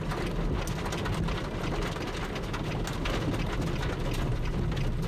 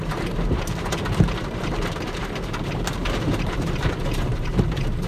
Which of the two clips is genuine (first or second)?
first